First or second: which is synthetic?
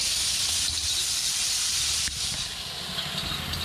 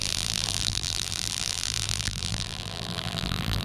second